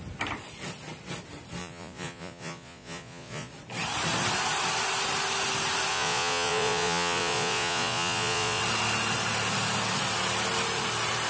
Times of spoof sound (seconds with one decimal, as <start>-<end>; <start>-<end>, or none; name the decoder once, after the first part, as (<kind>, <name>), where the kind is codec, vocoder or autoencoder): 1.6-3.5 (vocoder, Vocos); 5.9-8.6